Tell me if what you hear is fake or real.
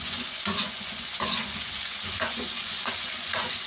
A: fake